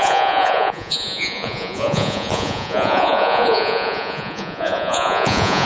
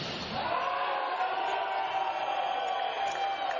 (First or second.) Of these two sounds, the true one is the second